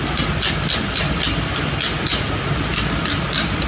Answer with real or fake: real